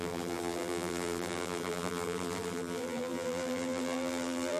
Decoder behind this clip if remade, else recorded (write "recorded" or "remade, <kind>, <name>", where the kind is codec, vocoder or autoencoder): remade, vocoder, BigVGAN v2